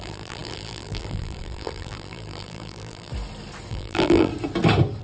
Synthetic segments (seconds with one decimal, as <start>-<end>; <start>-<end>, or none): 0.0-3.1; 3.7-4.3